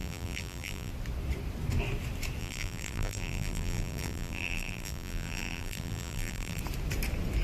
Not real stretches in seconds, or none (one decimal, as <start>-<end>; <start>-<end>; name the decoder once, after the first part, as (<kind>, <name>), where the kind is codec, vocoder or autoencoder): 0.0-0.9 (vocoder, BigVGAN v2); 2.4-6.6